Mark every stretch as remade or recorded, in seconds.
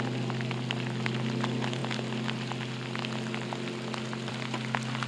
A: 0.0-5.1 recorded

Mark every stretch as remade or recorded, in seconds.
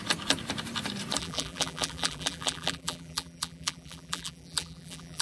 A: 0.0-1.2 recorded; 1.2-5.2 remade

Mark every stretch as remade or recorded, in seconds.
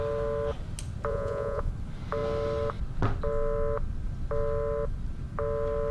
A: 0.0-1.1 recorded; 1.1-1.7 remade; 1.7-5.9 recorded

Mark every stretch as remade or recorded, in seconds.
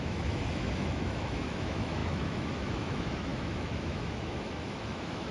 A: 0.0-5.3 remade